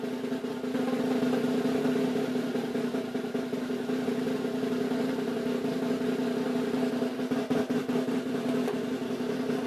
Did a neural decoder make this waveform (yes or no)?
no